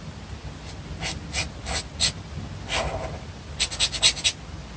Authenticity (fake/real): real